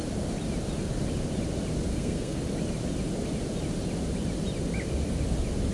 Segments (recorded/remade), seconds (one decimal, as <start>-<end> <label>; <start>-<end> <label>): 0.0-1.9 recorded; 1.9-2.4 remade; 2.4-5.7 recorded